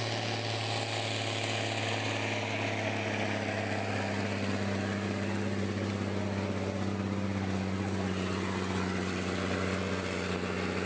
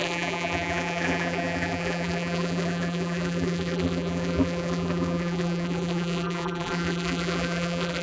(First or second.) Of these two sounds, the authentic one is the first